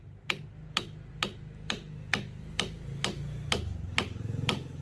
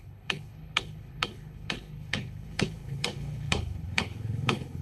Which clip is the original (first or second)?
first